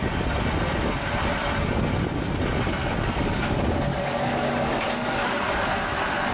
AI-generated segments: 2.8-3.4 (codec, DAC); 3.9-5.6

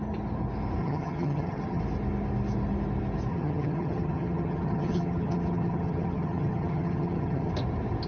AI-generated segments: 0.8-1.8 (vocoder, HiFi-GAN); 3.3-7.5

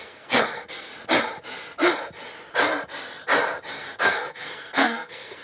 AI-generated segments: 0.0-0.9 (codec, SNAC); 3.7-5.4

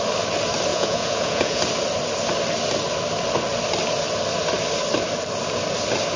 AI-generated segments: 0.7-1.6 (vocoder, Vocos)

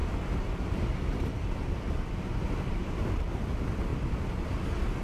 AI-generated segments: 0.0-3.0 (vocoder, BigVGAN v2)

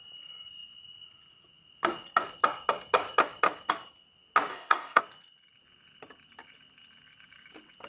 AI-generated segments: 4.5-5.0 (codec, ZipCodec)

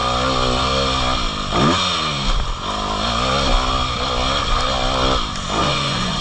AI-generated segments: 5.6-6.2 (vocoder, Vocos)